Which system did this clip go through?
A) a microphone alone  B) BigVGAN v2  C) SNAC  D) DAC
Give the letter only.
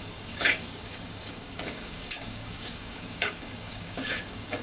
D